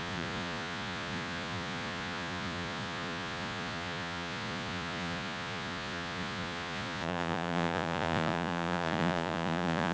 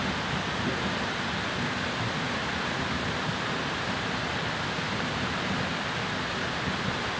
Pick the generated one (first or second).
first